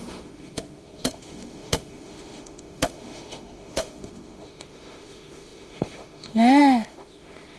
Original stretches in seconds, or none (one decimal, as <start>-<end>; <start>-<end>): none